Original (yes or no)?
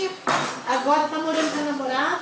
yes